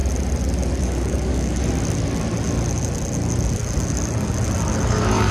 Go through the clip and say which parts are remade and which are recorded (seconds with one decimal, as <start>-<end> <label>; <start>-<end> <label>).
0.0-0.8 recorded; 0.8-1.6 remade; 1.6-4.8 recorded; 4.8-5.3 remade